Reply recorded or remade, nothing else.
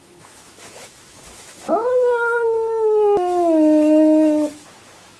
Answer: remade